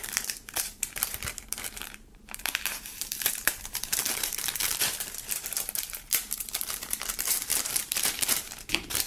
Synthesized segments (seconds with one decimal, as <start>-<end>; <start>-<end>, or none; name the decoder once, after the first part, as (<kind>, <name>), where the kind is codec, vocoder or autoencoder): 0.0-9.1 (vocoder, BigVGAN v2)

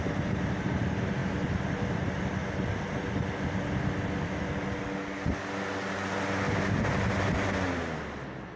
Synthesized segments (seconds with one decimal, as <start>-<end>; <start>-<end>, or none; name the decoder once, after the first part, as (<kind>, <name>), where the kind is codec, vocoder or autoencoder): none

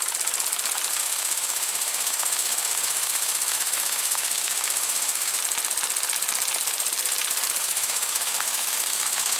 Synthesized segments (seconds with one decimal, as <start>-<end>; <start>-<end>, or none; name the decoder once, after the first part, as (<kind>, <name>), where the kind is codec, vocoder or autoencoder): 0.9-5.4 (autoencoder, DAC-VAE); 7.6-9.4